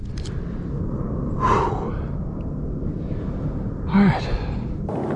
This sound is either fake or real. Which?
real